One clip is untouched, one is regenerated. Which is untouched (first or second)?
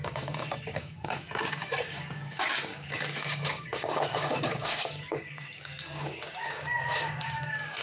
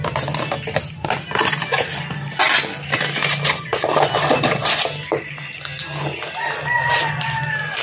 second